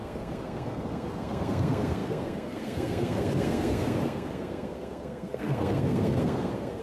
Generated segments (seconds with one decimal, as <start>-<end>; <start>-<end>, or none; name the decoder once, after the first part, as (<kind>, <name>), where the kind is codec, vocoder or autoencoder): 0.0-6.8 (codec, SNAC)